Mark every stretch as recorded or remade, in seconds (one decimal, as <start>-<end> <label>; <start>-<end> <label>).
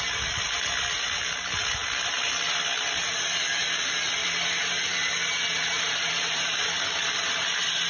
0.0-4.2 recorded; 4.2-7.9 remade